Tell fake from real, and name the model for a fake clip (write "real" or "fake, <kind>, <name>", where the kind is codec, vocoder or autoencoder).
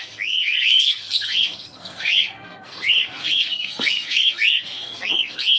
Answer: fake, codec, SNAC